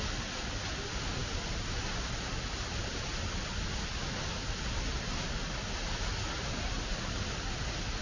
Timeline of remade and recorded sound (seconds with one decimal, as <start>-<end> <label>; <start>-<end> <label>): 0.0-8.0 recorded

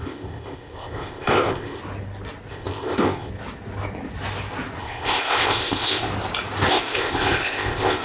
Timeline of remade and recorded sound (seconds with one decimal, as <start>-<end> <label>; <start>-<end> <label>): 0.0-1.8 remade; 1.8-2.5 recorded; 2.5-3.3 remade; 3.3-4.8 recorded; 4.8-6.1 remade; 6.1-6.7 recorded; 6.7-8.0 remade

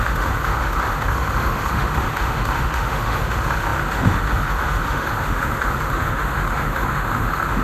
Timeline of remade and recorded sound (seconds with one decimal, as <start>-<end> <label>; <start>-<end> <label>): 0.0-7.6 remade

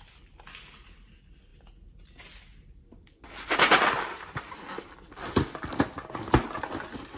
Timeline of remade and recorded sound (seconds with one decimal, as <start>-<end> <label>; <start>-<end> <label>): 0.0-7.2 recorded

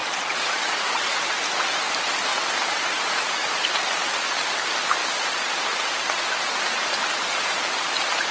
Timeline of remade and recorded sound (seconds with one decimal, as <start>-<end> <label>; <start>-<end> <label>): 0.0-1.4 remade; 1.4-8.3 recorded

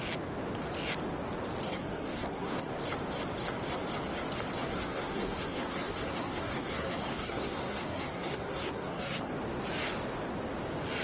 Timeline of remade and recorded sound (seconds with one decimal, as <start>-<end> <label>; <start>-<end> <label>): 0.0-1.7 recorded; 1.7-2.7 remade; 2.7-4.6 recorded; 4.6-9.3 remade; 9.3-11.0 recorded

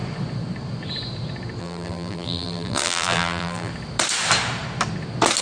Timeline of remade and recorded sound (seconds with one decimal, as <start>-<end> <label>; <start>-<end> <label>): 0.0-1.6 recorded; 1.6-3.7 remade; 3.7-5.4 recorded

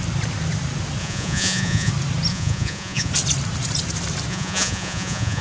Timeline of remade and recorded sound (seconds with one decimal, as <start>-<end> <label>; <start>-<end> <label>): 0.0-1.0 recorded; 1.0-1.9 remade; 1.9-2.3 recorded; 2.3-3.1 remade; 3.1-4.3 recorded; 4.3-5.4 remade